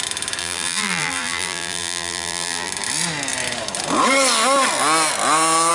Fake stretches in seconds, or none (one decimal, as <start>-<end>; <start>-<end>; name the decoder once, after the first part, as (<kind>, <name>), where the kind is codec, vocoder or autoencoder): 0.4-2.7 (vocoder, BigVGAN v2)